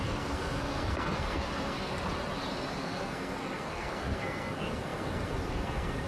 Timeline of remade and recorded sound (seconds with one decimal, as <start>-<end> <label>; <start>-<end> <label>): 0.0-1.9 remade; 1.9-2.8 recorded; 2.8-6.1 remade